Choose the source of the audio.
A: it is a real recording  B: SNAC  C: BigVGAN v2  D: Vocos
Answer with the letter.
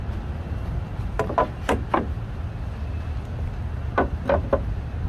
A